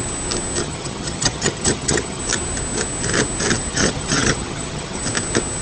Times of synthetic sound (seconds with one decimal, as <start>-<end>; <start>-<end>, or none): 0.6-2.2; 3.7-5.0